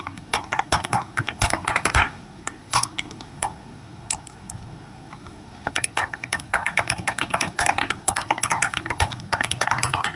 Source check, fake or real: fake